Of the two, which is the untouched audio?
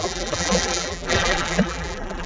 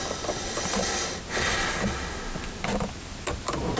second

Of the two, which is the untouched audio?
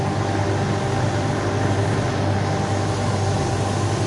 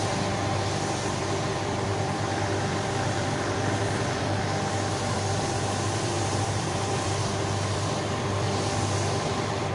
first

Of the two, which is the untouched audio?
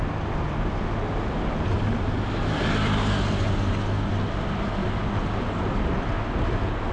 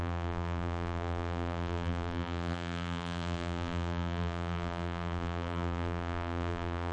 first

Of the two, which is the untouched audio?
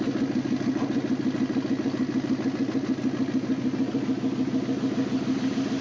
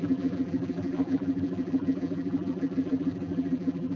first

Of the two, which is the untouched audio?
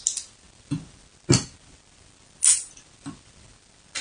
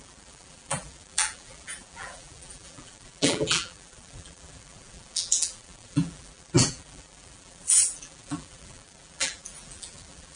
first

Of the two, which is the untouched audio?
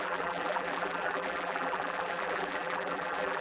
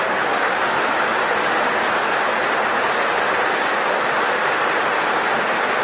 second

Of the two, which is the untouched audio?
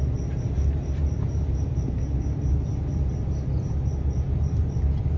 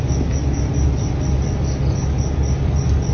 second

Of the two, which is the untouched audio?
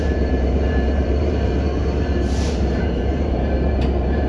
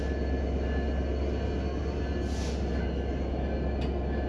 second